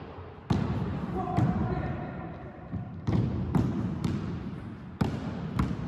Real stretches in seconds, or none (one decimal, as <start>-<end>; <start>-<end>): 0.0-0.9; 3.2-5.9